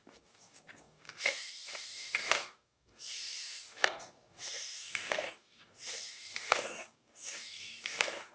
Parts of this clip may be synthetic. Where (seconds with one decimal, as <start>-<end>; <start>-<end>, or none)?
0.0-8.3